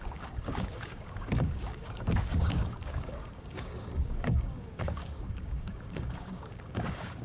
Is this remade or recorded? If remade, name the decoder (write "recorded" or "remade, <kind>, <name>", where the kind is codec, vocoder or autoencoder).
remade, codec, DAC